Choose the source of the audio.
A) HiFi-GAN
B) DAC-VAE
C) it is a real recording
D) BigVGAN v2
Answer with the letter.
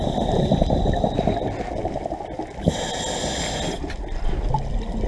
C